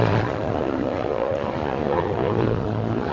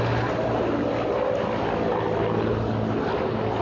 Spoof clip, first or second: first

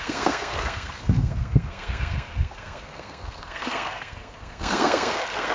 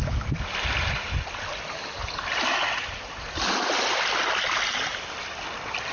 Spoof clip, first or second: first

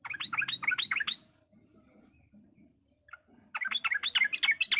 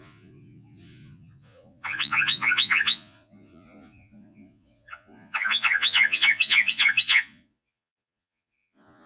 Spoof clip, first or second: second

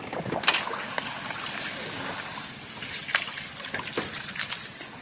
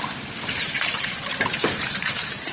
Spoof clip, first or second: second